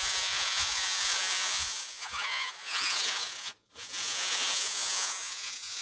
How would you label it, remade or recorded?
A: remade